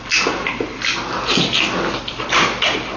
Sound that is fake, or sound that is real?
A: real